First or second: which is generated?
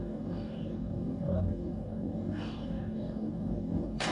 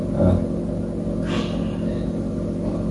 first